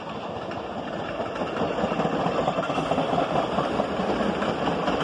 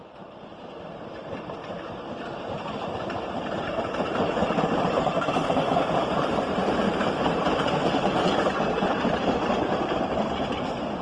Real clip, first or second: first